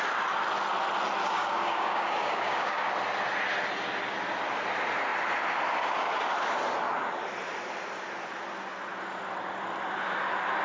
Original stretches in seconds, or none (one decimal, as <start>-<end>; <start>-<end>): 0.0-1.2; 2.9-10.6